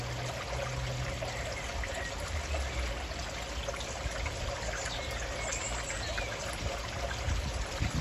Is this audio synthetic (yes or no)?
no